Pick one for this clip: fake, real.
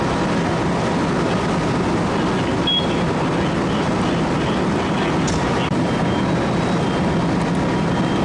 real